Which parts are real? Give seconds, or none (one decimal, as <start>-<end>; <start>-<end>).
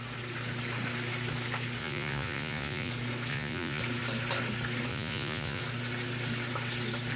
0.0-1.8; 2.9-3.3; 3.8-4.9; 5.6-7.2